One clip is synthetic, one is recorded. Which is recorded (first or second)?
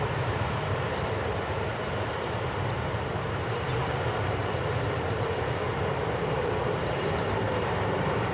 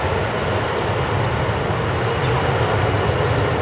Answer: second